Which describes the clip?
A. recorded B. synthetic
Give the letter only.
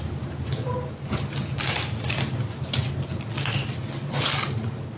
A